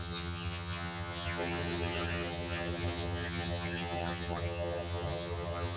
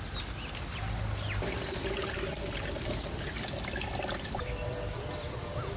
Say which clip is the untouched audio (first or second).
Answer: second